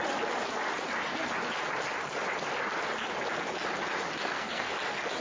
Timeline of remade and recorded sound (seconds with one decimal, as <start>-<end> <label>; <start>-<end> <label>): 0.0-4.2 recorded; 4.2-4.7 remade; 4.7-5.2 recorded